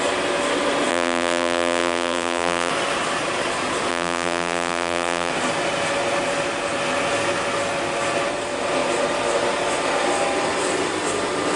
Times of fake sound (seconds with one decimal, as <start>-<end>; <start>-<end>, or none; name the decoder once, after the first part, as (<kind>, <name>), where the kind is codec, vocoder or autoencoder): 0.9-2.7 (vocoder, BigVGAN v2); 3.9-5.3